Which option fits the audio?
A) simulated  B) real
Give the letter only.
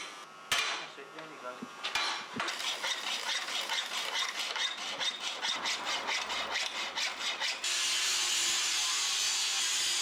B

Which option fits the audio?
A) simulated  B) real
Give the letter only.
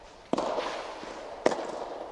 B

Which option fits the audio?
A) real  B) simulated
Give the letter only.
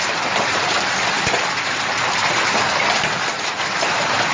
A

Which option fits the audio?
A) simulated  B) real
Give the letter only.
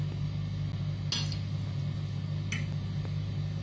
B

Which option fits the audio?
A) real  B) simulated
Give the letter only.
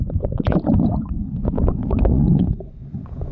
B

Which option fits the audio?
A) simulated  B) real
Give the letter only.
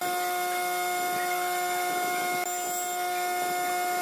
B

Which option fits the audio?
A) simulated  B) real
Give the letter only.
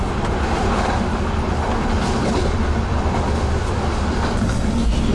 B